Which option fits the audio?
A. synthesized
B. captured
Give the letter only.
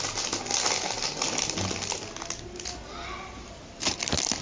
B